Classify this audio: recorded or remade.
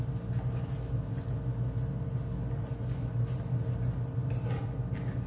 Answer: recorded